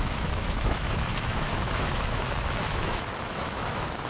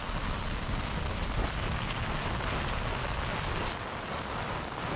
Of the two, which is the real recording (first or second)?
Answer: second